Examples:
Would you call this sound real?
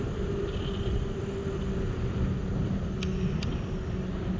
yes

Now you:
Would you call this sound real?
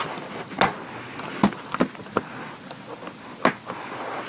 yes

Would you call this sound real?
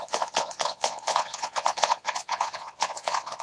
no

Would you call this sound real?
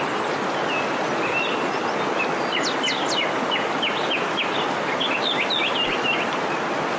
yes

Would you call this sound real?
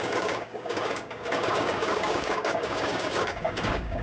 no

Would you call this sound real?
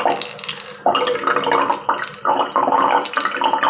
yes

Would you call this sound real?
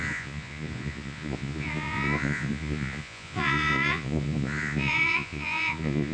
no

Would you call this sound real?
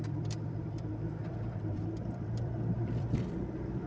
no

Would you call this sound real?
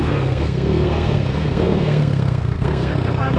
no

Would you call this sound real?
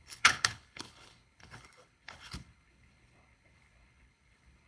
no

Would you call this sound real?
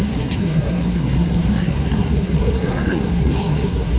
no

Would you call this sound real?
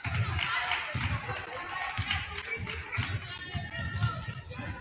yes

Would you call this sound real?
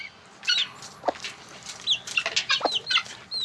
yes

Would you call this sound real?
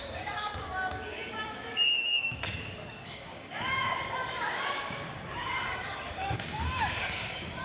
no